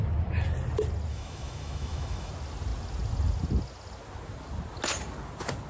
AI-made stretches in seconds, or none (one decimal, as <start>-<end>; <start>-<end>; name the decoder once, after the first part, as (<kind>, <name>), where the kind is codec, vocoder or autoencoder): 1.1-2.3 (autoencoder, DAC-VAE)